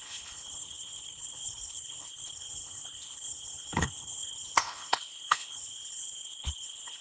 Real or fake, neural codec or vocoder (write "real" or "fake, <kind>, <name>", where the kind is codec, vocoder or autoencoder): fake, codec, HILCodec